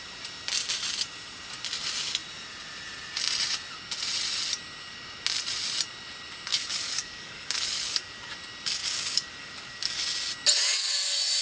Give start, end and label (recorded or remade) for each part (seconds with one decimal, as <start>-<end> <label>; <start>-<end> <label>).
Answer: 0.0-6.5 recorded; 6.5-8.3 remade; 8.3-8.8 recorded; 8.8-10.0 remade; 10.0-11.4 recorded